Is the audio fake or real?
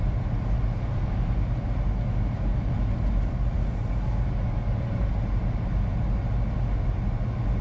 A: real